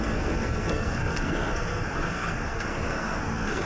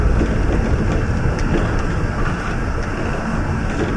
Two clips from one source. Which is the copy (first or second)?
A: first